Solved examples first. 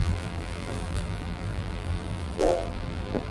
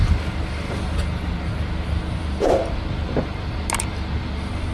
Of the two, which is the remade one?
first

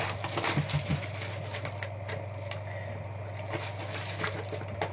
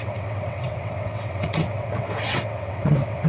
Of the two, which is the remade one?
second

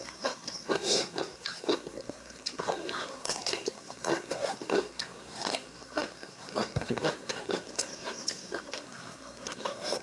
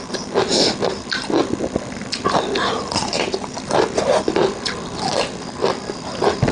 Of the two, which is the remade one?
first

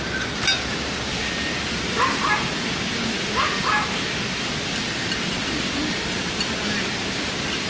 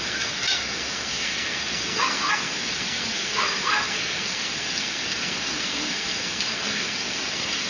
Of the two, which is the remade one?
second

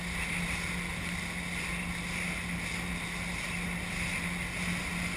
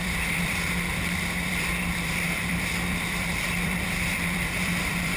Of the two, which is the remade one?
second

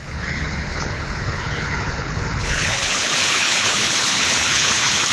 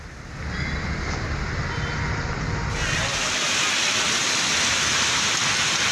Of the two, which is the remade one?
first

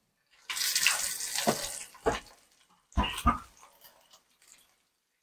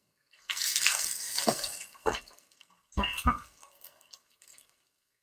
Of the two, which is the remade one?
second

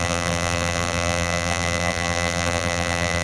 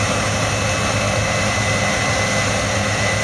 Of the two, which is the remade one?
first